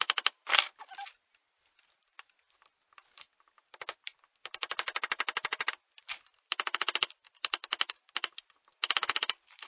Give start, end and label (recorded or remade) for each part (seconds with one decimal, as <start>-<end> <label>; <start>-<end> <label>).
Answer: 0.0-9.7 recorded